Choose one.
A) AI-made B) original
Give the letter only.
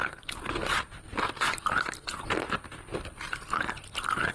B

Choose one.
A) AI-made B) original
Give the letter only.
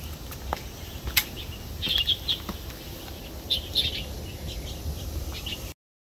B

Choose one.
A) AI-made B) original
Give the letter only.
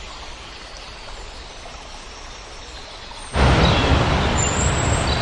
B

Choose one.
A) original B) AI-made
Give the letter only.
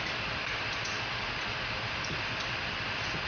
A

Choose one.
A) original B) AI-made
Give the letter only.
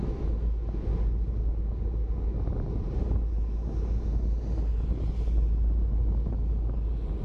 A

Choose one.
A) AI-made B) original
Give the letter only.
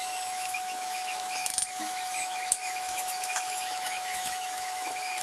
A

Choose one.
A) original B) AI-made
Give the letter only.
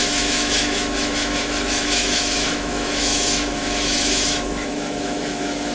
B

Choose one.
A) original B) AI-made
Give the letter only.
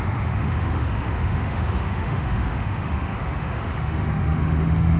B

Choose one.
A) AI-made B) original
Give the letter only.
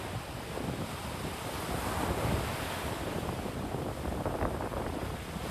B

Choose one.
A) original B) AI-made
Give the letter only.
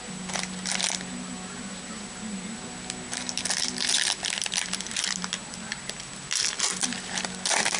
A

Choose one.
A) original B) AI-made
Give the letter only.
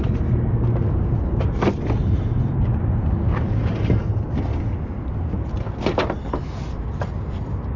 A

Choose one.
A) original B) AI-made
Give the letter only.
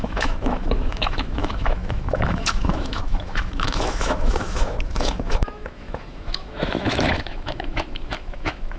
B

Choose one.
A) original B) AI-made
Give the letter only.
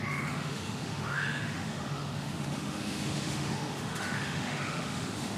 B